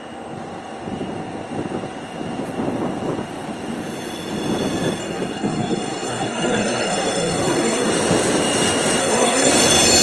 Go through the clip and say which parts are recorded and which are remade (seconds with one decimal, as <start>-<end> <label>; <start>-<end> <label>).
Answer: 0.0-5.0 recorded; 5.0-7.9 remade; 7.9-9.0 recorded; 9.0-9.5 remade; 9.5-10.0 recorded